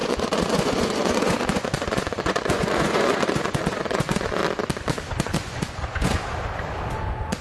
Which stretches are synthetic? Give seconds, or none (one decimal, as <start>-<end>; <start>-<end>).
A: 0.0-4.4; 5.1-6.2; 6.9-7.4